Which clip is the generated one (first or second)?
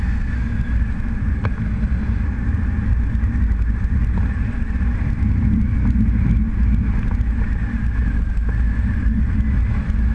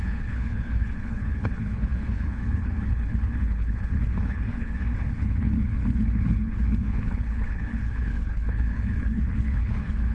second